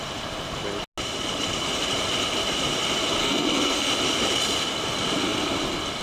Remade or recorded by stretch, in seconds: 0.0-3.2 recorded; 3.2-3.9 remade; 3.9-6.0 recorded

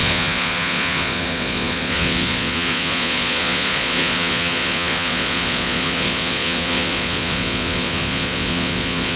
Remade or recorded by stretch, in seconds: 0.0-9.2 remade

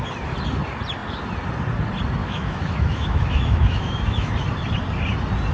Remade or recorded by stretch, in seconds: 0.0-2.2 recorded; 2.2-4.3 remade; 4.3-5.5 recorded

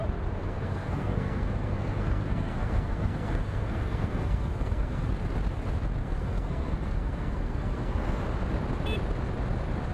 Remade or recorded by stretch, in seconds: 0.0-0.4 recorded; 0.4-5.1 remade; 5.1-6.0 recorded; 6.0-8.2 remade; 8.2-9.9 recorded

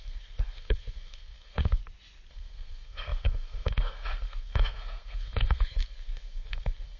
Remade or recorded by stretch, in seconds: 0.0-1.8 remade; 1.8-2.3 recorded; 2.3-7.0 remade

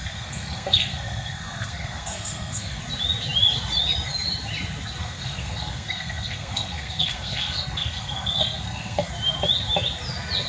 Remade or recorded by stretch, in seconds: 0.0-2.8 remade; 2.8-5.0 recorded; 5.0-9.1 remade; 9.1-10.5 recorded

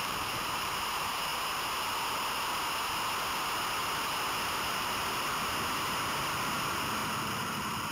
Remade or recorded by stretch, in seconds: 0.0-1.3 remade; 1.3-4.5 recorded; 4.5-5.0 remade; 5.0-6.4 recorded; 6.4-7.0 remade; 7.0-7.9 recorded

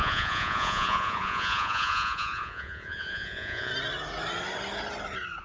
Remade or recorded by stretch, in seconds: 0.0-3.7 remade; 3.7-5.4 recorded